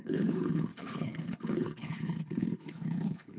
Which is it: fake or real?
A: fake